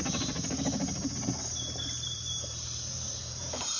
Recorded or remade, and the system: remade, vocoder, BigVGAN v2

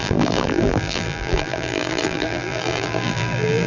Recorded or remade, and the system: remade, vocoder, BigVGAN v2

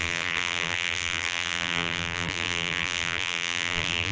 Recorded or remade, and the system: remade, vocoder, BigVGAN v2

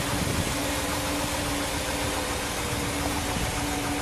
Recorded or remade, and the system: recorded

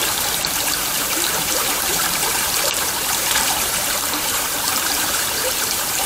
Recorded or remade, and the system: remade, vocoder, BigVGAN v2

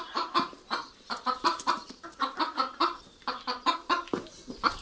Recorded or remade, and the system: remade, vocoder, BigVGAN v2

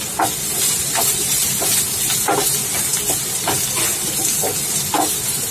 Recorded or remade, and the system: recorded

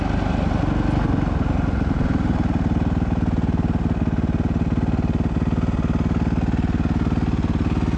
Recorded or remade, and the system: recorded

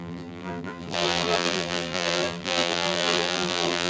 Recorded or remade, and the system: remade, vocoder, BigVGAN v2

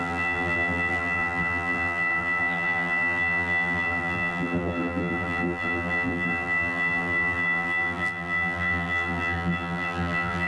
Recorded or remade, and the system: remade, vocoder, BigVGAN v2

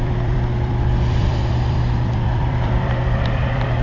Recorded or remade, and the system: remade, vocoder, BigVGAN v2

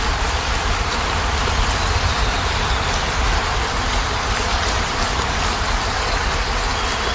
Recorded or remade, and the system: remade, vocoder, BigVGAN v2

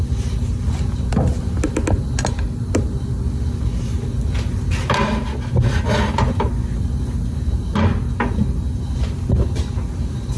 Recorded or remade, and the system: recorded